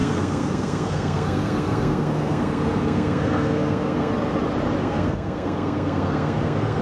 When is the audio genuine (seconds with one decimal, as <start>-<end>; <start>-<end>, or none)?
4.1-4.8